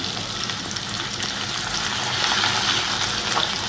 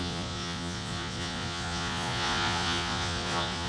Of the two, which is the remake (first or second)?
second